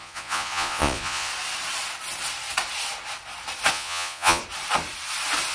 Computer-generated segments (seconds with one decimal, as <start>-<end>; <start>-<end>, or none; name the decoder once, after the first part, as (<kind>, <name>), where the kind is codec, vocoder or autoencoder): 0.0-1.3 (vocoder, Vocos); 3.7-4.4